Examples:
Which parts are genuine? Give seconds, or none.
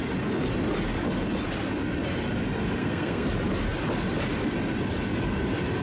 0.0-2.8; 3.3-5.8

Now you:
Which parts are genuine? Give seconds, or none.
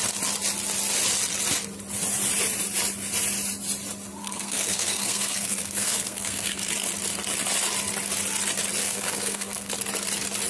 0.0-4.2; 6.7-8.8; 9.7-10.5